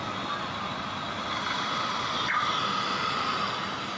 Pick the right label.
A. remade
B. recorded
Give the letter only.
B